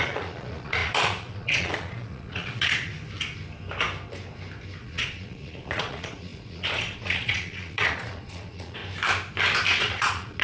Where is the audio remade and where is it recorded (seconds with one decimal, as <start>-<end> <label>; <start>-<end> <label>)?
0.0-2.9 remade; 2.9-4.8 recorded; 4.8-8.8 remade; 8.8-9.8 recorded; 9.8-10.4 remade